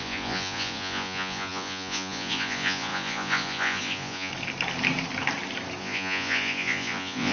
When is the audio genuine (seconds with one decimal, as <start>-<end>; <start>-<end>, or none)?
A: 4.3-5.8